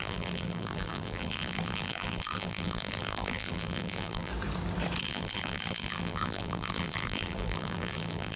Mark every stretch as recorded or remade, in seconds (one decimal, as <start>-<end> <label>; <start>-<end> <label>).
0.0-4.3 remade; 4.3-5.0 recorded; 5.0-8.4 remade